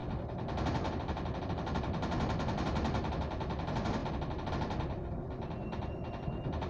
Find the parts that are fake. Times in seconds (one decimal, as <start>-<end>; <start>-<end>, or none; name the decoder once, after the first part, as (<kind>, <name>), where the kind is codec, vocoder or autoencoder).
none